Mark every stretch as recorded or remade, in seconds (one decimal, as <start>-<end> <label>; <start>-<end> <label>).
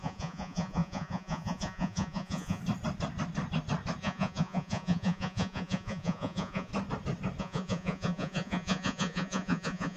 0.0-2.6 remade; 2.6-4.0 recorded; 4.0-6.7 remade; 6.7-7.4 recorded; 7.4-10.0 remade